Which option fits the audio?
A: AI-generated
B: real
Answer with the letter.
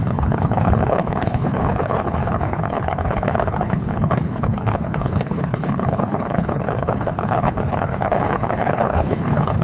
A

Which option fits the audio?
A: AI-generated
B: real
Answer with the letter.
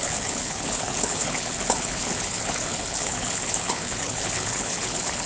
A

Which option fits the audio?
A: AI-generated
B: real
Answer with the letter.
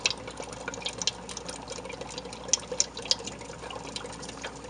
B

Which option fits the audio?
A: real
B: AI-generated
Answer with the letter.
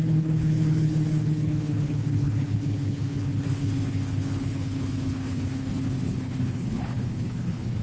B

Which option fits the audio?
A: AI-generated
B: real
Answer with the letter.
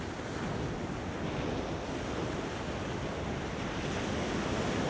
B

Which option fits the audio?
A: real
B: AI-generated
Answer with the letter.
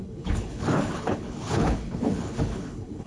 B